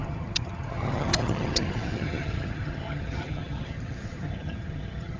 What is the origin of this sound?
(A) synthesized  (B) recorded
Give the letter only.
A